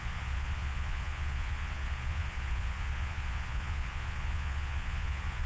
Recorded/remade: remade